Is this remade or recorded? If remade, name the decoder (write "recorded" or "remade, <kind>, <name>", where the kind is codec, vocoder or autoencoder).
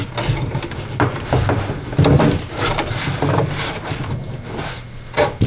recorded